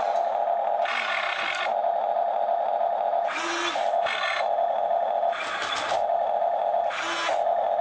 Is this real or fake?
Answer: real